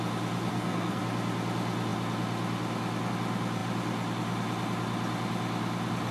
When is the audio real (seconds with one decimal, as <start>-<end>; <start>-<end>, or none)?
0.0-0.5; 1.0-6.1